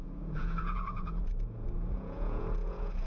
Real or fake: fake